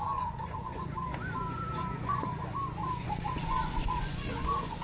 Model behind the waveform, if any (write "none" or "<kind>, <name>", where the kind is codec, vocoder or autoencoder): vocoder, Vocos